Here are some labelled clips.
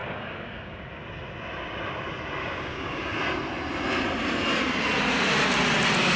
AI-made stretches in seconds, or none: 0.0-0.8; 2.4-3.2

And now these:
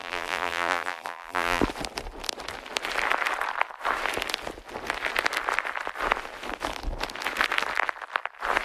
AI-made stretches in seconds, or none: 0.0-1.6

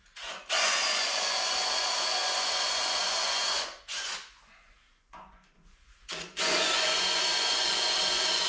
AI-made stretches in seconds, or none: 0.0-8.5

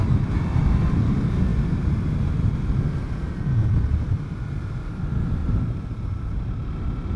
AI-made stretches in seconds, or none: 5.4-6.7